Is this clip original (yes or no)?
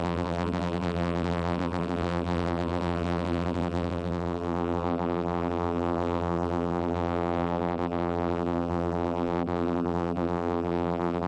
no